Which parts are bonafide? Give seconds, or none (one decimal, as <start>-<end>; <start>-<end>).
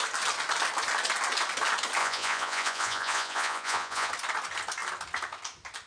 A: 0.0-2.0; 4.1-5.9